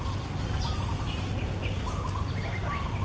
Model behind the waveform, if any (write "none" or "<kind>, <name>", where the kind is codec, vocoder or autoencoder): none